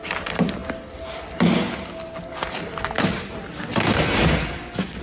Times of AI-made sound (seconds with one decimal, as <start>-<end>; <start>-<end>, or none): none